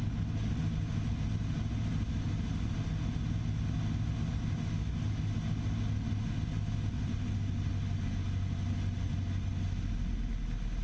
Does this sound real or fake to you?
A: real